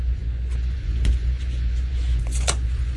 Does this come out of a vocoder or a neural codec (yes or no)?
yes